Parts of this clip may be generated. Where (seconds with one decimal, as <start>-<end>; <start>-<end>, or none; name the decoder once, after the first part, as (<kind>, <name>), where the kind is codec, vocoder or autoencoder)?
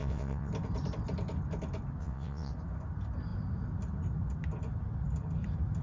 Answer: 0.0-0.5 (vocoder, WaveNeXt); 2.0-2.5